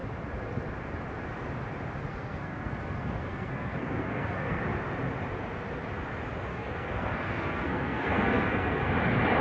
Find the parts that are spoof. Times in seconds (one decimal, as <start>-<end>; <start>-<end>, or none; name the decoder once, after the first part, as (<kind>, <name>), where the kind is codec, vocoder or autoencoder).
2.1-4.6 (codec, SNAC); 6.5-8.9

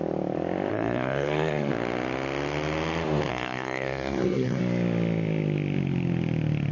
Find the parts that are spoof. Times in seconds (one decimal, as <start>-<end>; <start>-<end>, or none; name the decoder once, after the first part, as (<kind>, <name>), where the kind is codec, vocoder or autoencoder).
0.7-1.7 (codec, SNAC); 3.3-4.6

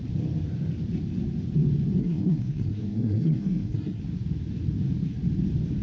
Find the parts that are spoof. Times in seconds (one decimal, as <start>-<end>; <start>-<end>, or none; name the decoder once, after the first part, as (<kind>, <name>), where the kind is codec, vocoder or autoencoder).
2.0-4.0 (codec, SNAC)